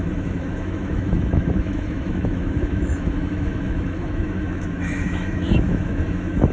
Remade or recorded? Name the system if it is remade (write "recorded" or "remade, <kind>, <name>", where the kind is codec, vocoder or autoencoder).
remade, autoencoder, DAC-VAE